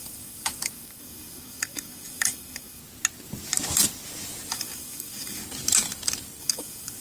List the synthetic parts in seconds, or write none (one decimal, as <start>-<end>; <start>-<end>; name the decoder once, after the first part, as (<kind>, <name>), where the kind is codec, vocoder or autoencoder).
0.0-2.8 (codec, DAC); 4.5-5.4; 6.4-7.0